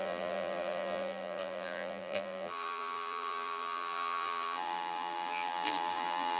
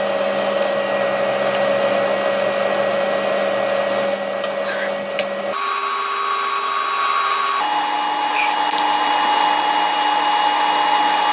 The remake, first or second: first